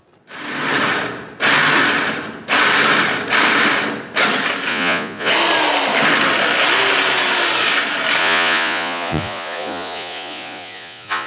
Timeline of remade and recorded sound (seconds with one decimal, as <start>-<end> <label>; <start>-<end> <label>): 0.0-4.7 recorded; 4.7-5.3 remade; 5.3-8.2 recorded; 8.2-11.3 remade